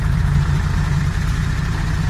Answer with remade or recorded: recorded